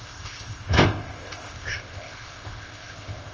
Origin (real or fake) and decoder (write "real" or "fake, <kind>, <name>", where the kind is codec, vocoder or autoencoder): fake, codec, ZipCodec